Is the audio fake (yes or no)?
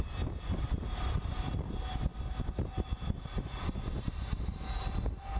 yes